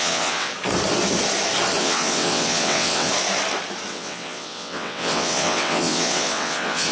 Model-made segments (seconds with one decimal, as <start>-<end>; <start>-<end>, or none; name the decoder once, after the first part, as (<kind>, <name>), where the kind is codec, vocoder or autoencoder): 0.0-0.5 (vocoder, WaveNeXt); 1.8-3.1; 3.9-6.9